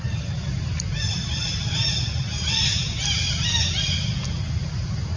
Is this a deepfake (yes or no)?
no